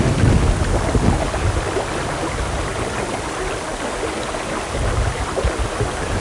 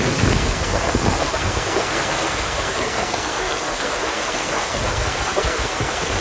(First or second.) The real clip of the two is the first